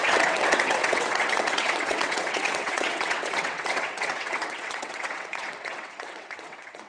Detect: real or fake fake